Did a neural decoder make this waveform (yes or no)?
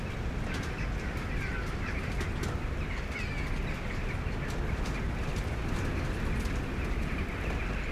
no